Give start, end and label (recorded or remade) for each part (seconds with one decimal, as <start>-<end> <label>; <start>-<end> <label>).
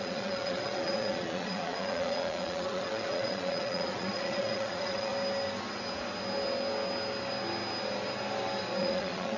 0.0-5.1 remade; 5.1-8.8 recorded; 8.8-9.4 remade